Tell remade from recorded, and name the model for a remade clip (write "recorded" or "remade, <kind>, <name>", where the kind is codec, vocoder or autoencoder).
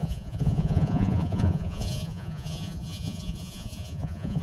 remade, vocoder, Vocos